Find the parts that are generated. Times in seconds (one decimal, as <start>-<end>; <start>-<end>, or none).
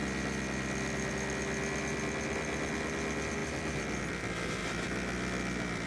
0.0-1.1; 3.4-4.0; 4.6-5.9